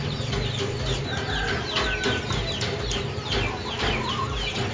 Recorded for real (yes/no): yes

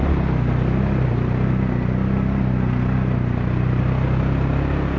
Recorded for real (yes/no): yes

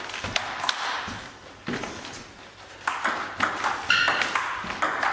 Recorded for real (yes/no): yes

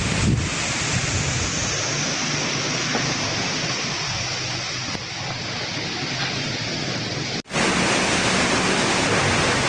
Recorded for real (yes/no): yes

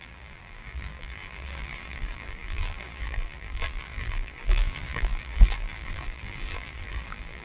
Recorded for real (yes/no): no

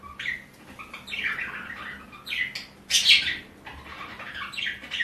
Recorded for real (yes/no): yes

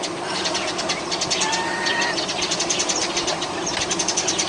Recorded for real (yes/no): no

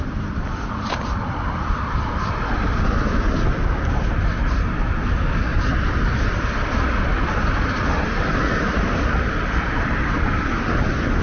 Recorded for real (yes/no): no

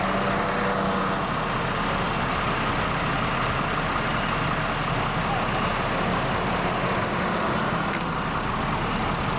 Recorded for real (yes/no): yes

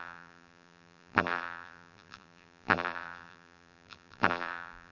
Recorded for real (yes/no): no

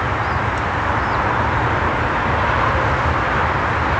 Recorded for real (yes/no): yes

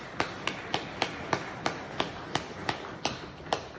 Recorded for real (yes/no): yes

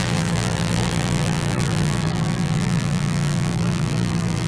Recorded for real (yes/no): no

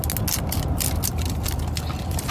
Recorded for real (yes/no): yes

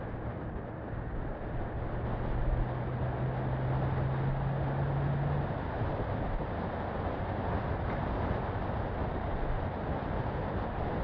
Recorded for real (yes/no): yes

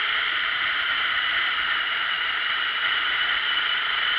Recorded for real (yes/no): no